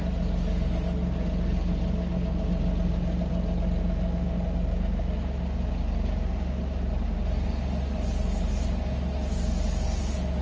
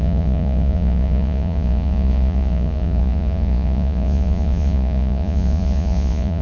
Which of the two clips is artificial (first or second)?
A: second